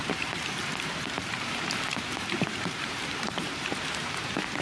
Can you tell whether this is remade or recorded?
remade